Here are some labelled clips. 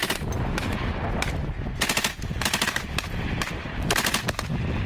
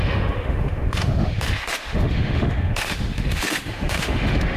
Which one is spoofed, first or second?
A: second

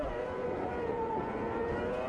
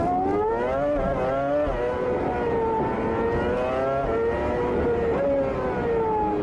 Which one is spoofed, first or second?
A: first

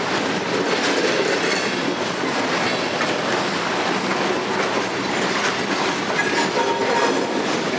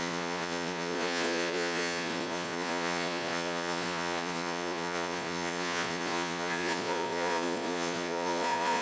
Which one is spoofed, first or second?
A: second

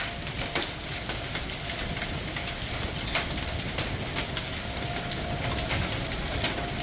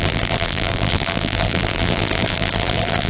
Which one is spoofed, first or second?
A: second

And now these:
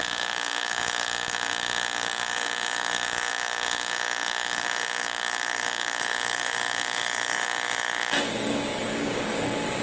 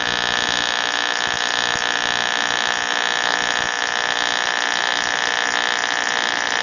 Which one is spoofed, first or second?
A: first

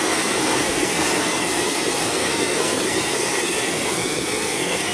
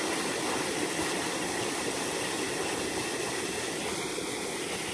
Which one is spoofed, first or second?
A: first